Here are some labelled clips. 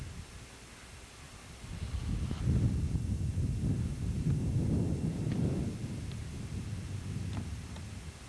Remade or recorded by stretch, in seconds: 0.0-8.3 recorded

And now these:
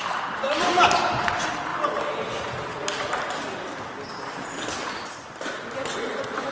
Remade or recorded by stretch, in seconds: 0.0-6.5 recorded

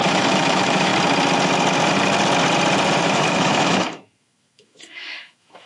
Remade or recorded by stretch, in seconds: 0.0-0.9 remade; 0.9-3.0 recorded; 3.0-5.7 remade

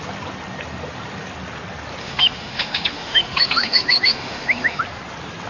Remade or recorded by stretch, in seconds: 0.0-2.0 recorded; 2.0-4.8 remade; 4.8-5.5 recorded

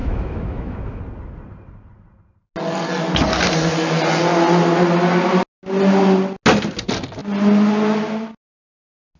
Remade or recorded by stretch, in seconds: 0.0-1.0 remade; 1.0-9.2 recorded

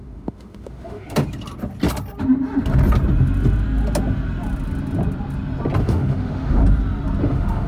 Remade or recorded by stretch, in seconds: 0.0-1.2 remade; 1.2-5.8 recorded; 5.8-6.6 remade; 6.6-7.2 recorded; 7.2-7.7 remade